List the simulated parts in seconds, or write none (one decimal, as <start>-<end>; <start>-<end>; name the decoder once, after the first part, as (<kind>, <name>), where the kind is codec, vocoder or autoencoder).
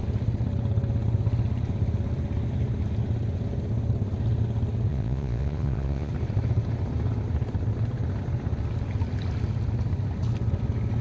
4.9-6.1 (vocoder, Vocos)